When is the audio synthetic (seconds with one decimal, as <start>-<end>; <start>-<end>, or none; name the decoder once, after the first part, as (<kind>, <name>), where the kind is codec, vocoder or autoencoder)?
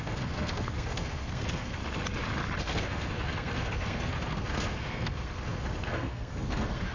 0.0-1.8 (codec, SNAC); 2.6-6.9